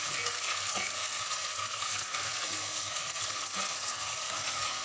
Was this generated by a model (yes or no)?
yes